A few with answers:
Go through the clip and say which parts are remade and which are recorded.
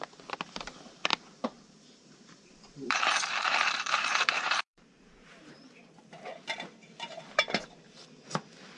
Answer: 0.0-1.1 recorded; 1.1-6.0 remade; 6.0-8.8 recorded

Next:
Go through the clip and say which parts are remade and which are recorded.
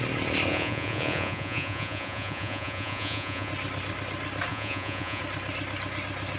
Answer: 0.0-0.5 recorded; 0.5-3.5 remade; 3.5-4.5 recorded; 4.5-5.2 remade; 5.2-6.4 recorded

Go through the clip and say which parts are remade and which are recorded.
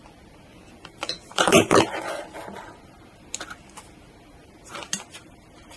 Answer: 0.0-0.5 recorded; 0.5-2.2 remade; 2.2-5.8 recorded